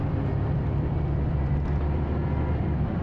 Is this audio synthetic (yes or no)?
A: yes